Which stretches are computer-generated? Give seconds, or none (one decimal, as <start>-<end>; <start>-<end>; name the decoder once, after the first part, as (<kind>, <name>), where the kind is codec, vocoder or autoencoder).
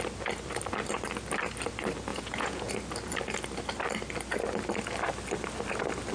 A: 2.1-2.7 (vocoder, Vocos)